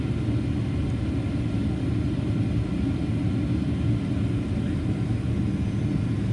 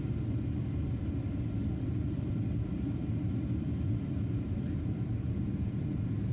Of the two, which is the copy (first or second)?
second